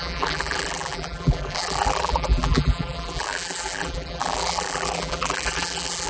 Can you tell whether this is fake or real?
fake